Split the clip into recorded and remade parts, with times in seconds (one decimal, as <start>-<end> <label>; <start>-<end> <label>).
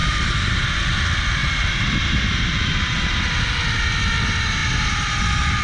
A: 0.0-0.6 remade; 0.6-1.4 recorded; 1.4-3.1 remade; 3.1-5.6 recorded